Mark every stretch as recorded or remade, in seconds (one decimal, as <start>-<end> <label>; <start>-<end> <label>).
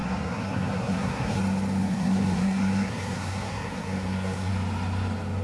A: 0.0-1.4 remade; 1.4-1.8 recorded; 1.8-4.5 remade; 4.5-5.4 recorded